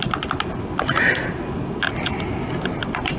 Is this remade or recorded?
recorded